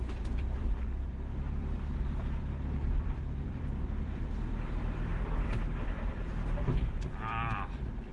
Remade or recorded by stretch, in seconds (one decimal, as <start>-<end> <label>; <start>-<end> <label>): 0.0-8.1 remade

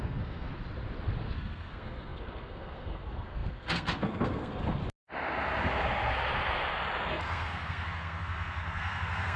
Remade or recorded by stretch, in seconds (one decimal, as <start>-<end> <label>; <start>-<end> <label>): 0.0-0.5 remade; 0.5-1.2 recorded; 1.2-4.8 remade; 4.8-7.1 recorded; 7.1-9.4 remade

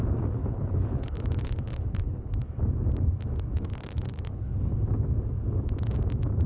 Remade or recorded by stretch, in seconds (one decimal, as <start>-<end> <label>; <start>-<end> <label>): 0.0-0.4 recorded; 0.4-2.3 remade; 2.3-3.5 recorded; 3.5-4.7 remade; 4.7-6.5 recorded

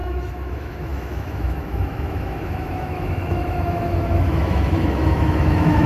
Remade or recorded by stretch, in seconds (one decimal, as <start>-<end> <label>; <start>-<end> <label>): 0.0-5.9 remade

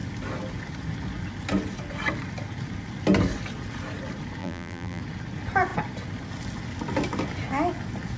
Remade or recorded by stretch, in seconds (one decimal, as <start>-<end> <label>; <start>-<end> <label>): 0.0-4.4 recorded; 4.4-5.0 remade; 5.0-8.2 recorded